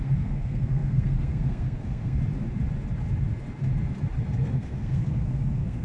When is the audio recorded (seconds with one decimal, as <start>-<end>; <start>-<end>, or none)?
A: 2.2-4.4